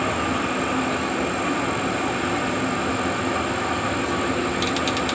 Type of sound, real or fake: real